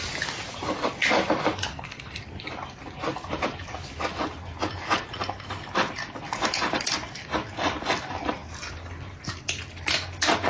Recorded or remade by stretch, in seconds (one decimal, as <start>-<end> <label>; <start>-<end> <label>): 0.0-1.7 recorded; 1.7-2.2 remade; 2.2-10.5 recorded